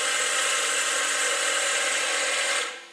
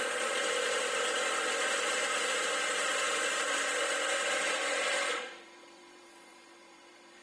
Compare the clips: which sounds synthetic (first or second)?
second